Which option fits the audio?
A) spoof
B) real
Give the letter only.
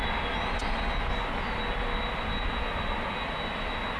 B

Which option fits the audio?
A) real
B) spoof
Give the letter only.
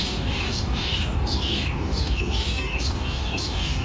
B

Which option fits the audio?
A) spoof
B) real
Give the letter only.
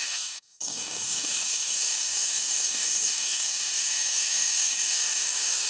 A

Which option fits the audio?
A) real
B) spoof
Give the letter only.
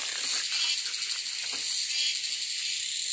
A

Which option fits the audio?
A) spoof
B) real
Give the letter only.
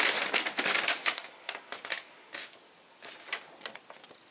B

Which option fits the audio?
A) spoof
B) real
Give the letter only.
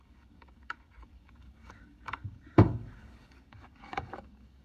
A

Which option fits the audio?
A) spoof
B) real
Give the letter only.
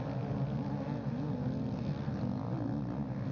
B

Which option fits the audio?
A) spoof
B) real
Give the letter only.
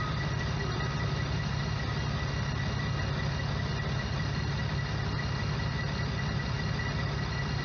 B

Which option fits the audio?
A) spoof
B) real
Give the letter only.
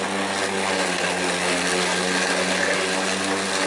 B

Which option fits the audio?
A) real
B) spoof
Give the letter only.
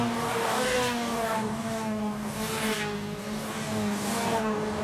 B